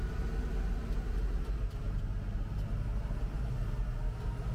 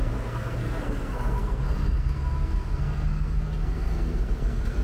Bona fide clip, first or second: first